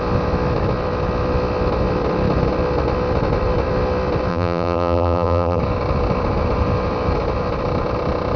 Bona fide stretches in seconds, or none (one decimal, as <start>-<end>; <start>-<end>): 0.0-4.3; 5.6-8.4

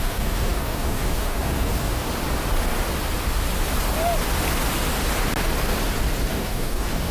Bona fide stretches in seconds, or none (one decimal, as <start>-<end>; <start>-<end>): 2.0-6.3

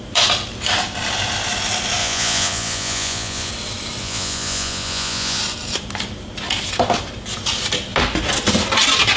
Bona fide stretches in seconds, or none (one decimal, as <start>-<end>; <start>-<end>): 0.0-2.0; 3.5-4.0; 5.4-9.2

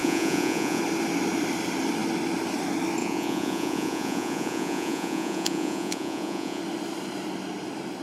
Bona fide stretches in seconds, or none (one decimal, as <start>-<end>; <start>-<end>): 0.8-3.0; 6.6-8.0